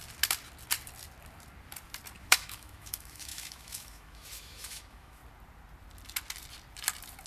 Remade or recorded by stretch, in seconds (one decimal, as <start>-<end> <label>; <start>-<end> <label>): 0.0-2.2 recorded; 2.2-5.2 remade; 5.2-7.3 recorded